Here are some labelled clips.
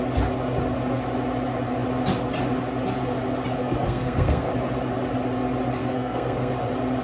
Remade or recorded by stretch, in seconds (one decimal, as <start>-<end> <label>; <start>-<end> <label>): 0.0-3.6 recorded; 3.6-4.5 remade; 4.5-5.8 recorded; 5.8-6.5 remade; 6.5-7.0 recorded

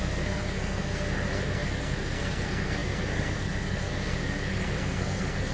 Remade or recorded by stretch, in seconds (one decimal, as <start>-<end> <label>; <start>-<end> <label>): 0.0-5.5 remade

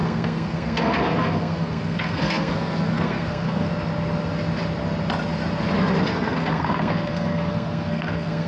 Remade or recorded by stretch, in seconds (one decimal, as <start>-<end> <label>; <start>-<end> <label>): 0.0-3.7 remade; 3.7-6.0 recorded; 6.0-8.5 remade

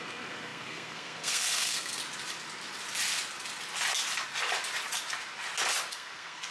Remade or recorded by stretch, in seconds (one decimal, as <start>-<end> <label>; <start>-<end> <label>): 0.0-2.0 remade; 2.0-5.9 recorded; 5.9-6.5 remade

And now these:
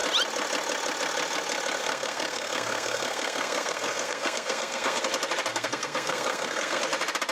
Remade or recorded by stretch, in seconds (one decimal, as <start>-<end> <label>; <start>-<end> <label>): 0.0-1.8 recorded; 1.8-5.0 remade; 5.0-5.5 recorded; 5.5-6.8 remade; 6.8-7.3 recorded

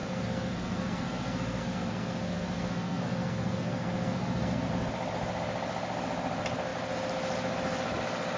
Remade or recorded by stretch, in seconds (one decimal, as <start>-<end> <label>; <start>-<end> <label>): 0.0-4.7 remade; 4.7-8.4 recorded

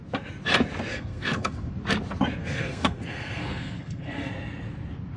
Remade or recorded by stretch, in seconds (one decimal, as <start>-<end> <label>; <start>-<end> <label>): 0.0-0.9 recorded; 0.9-1.7 remade; 1.7-2.4 recorded; 2.4-4.3 remade; 4.3-5.2 recorded